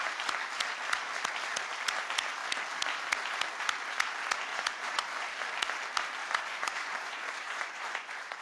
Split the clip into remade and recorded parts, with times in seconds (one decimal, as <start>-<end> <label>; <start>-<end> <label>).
0.0-4.5 recorded; 4.5-5.3 remade; 5.3-6.2 recorded; 6.2-8.4 remade